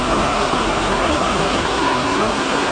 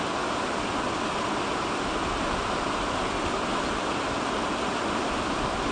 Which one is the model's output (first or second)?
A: first